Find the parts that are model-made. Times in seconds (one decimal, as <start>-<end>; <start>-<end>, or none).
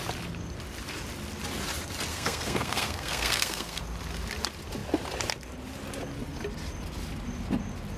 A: 2.1-3.8